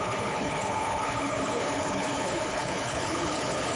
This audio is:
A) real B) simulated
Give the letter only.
B